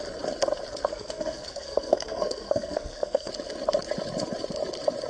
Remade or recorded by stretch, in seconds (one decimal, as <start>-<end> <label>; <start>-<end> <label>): 0.0-0.9 recorded; 0.9-3.3 remade; 3.3-5.1 recorded